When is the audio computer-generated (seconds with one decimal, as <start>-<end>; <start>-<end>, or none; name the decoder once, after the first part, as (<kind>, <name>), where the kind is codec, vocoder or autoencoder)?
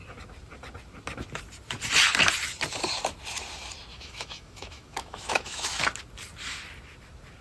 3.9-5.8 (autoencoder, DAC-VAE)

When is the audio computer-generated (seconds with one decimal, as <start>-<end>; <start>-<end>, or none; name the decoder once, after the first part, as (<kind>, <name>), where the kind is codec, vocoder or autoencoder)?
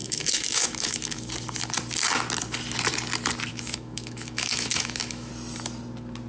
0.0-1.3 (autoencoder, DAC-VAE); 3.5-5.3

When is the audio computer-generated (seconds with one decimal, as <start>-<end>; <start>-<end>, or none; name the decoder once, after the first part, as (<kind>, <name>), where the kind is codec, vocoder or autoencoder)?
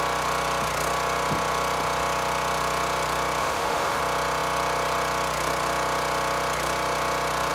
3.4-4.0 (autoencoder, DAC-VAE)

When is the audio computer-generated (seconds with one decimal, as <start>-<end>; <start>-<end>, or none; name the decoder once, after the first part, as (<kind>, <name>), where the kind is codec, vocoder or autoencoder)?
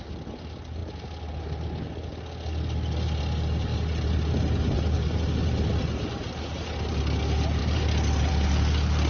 none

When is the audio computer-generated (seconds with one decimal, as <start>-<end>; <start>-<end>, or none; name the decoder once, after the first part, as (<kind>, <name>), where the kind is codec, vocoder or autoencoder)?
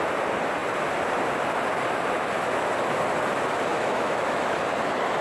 3.7-4.6 (autoencoder, DAC-VAE)